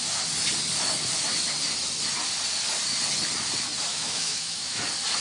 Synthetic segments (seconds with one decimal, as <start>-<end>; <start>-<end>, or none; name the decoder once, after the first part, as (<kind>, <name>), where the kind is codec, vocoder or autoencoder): 3.9-4.8 (autoencoder, DAC-VAE)